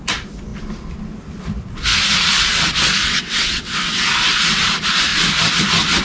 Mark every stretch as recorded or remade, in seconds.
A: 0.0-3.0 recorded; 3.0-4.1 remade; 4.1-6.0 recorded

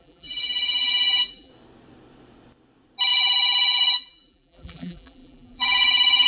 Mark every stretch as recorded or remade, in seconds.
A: 0.0-1.5 remade; 1.5-3.1 recorded; 3.1-6.3 remade

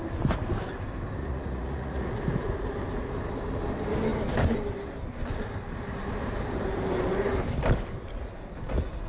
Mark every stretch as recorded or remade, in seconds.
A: 0.0-1.2 recorded; 1.2-2.1 remade; 2.1-9.1 recorded

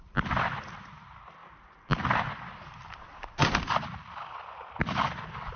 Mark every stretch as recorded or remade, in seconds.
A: 0.0-5.6 recorded

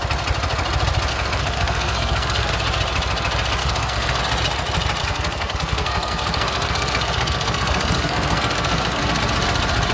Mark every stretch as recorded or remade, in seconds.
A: 0.0-1.1 recorded; 1.1-2.5 remade; 2.5-3.6 recorded; 3.6-4.2 remade; 4.2-5.0 recorded; 5.0-9.0 remade; 9.0-9.9 recorded

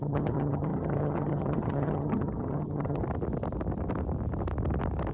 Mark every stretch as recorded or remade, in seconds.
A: 0.0-3.0 remade; 3.0-5.1 recorded

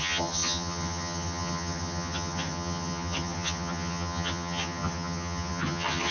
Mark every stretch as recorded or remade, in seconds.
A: 0.0-6.1 remade

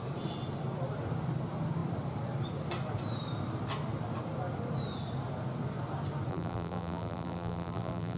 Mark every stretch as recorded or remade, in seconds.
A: 0.0-6.3 recorded; 6.3-8.2 remade